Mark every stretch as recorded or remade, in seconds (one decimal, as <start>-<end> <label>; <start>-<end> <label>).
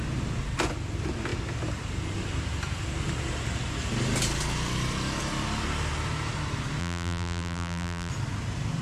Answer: 0.0-6.8 recorded; 6.8-8.1 remade; 8.1-8.8 recorded